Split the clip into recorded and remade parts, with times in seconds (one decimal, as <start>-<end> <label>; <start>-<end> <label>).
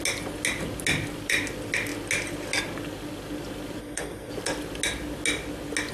0.0-3.8 recorded; 3.8-4.3 remade; 4.3-5.9 recorded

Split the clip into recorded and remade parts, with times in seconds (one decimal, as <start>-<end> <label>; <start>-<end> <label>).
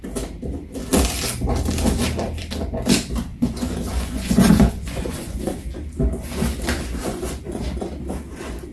0.0-3.3 recorded; 3.3-5.6 remade; 5.6-7.0 recorded; 7.0-7.6 remade; 7.6-8.7 recorded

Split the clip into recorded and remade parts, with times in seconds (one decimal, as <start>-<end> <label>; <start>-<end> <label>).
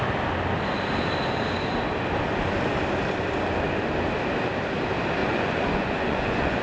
0.0-5.2 recorded; 5.2-6.6 remade